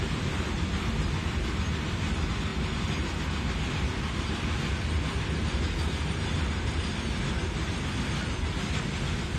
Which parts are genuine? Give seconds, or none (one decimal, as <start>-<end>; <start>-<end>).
0.0-9.4